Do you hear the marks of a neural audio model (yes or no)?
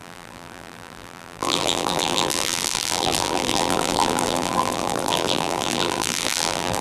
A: yes